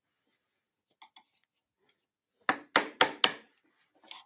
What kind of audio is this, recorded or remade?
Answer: recorded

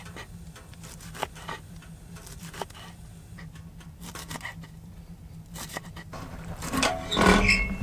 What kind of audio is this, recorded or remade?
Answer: recorded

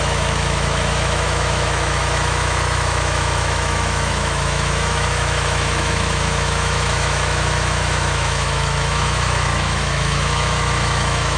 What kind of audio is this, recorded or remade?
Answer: remade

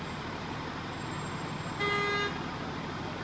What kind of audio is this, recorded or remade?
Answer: recorded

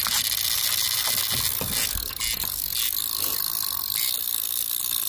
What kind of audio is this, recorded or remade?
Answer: recorded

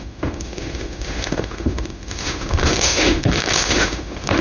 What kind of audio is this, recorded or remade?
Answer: remade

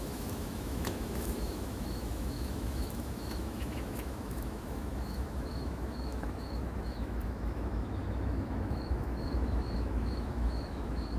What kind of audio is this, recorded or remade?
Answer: remade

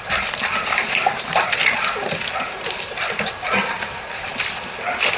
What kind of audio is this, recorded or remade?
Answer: recorded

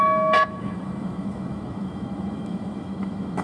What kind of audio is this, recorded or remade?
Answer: remade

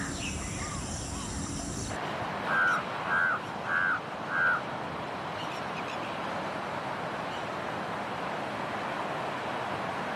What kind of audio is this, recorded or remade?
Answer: recorded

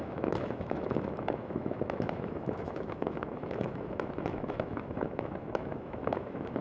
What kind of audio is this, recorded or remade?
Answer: remade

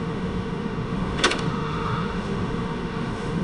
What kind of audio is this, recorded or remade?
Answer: remade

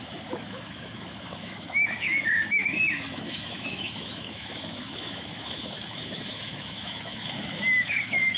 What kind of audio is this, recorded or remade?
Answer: remade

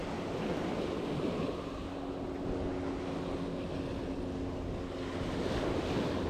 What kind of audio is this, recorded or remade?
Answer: recorded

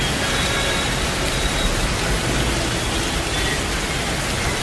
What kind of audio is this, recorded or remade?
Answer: recorded